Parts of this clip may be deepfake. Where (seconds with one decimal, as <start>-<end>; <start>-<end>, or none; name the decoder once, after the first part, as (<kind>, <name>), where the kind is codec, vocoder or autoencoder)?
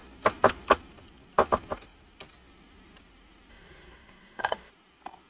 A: 3.5-4.7 (codec, SNAC)